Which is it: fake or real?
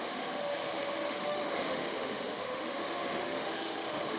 fake